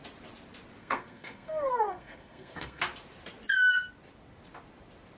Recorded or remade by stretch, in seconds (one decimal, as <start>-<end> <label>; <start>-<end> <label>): 0.0-0.8 recorded; 0.8-2.8 remade; 2.8-5.2 recorded